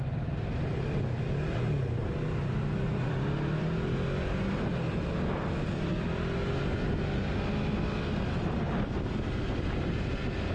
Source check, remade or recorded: recorded